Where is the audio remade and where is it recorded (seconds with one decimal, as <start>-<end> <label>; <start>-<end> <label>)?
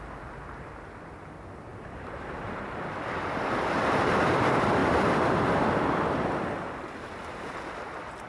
0.0-8.3 remade